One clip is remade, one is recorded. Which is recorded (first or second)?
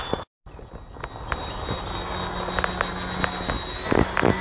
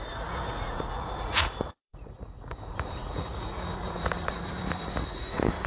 first